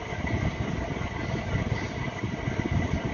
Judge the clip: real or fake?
real